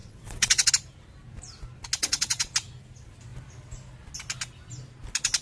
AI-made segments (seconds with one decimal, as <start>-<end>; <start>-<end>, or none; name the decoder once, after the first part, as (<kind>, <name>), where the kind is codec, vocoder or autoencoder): 0.0-0.7 (vocoder, WaveNeXt); 2.0-2.5